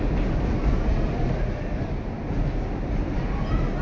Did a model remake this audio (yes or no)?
no